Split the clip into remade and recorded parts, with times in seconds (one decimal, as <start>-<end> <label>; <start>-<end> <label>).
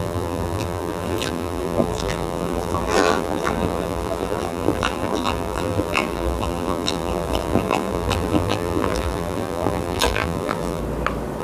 0.0-10.8 remade; 10.8-11.4 recorded